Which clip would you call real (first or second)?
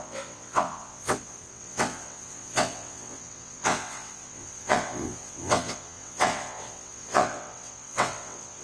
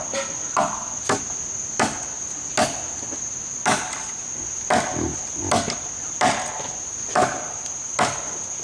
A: second